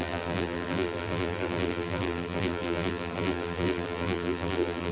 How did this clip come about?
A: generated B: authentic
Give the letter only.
A